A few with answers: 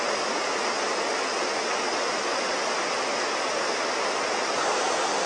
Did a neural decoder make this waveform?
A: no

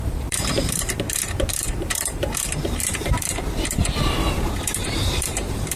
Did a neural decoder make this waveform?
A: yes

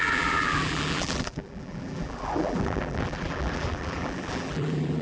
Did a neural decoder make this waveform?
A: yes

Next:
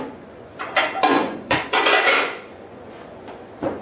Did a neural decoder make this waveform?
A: yes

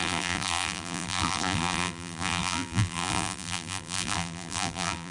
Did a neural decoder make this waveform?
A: yes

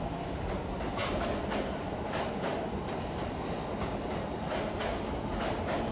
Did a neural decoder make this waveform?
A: no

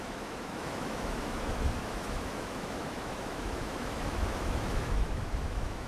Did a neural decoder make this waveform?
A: yes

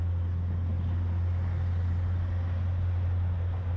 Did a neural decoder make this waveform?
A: no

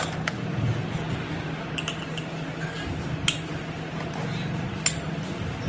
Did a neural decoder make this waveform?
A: no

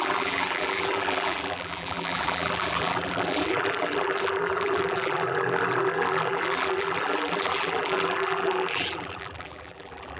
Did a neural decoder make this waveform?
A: yes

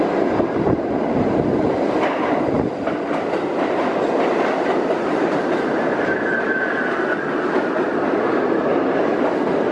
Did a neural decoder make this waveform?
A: no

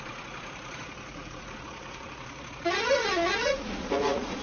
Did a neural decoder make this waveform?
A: yes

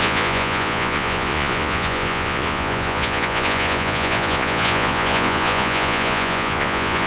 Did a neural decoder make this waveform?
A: yes